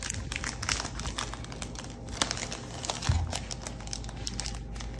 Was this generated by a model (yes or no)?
no